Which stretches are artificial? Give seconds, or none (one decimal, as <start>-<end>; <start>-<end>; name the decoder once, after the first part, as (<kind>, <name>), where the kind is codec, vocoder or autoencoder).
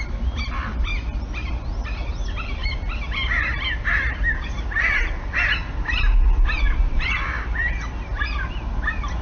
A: none